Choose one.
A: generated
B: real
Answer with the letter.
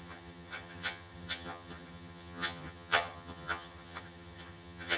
A